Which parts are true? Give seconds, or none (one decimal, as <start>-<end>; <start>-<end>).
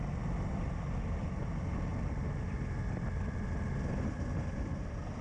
0.0-5.2